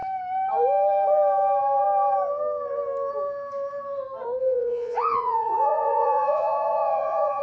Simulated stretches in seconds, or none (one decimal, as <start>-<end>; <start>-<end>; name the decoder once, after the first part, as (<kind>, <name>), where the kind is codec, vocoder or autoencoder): 4.4-7.4 (vocoder, Vocos)